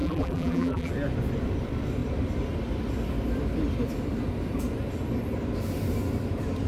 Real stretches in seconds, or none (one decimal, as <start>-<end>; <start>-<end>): 0.9-6.7